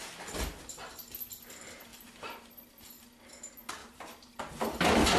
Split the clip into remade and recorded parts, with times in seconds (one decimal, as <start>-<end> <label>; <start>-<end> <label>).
0.0-1.9 recorded; 1.9-2.5 remade; 2.5-3.8 recorded; 3.8-4.4 remade; 4.4-5.2 recorded

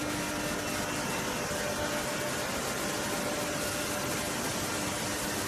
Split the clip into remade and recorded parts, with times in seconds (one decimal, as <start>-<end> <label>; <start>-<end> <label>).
0.0-5.5 recorded